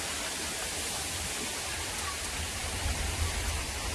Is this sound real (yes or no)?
yes